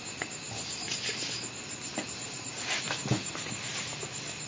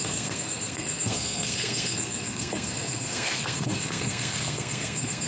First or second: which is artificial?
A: second